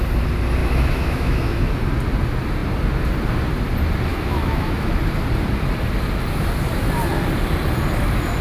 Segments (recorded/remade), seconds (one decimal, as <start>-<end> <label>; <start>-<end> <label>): 0.0-0.6 recorded; 0.6-1.7 remade; 1.7-4.1 recorded; 4.1-4.9 remade; 4.9-8.4 recorded